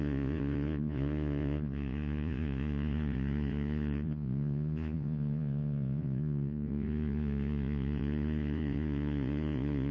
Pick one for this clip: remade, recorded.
remade